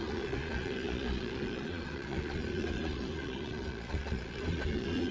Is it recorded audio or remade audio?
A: remade